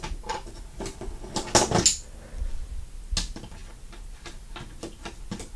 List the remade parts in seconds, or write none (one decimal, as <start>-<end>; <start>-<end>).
none